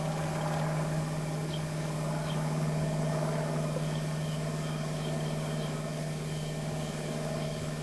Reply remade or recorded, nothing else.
remade